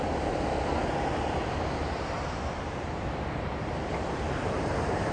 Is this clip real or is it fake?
fake